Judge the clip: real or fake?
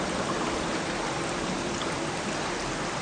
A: real